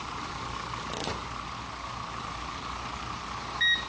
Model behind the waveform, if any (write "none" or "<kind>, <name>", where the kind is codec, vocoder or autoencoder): none